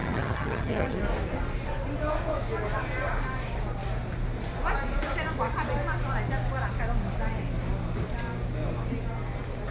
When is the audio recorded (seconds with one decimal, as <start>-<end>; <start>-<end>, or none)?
1.0-9.7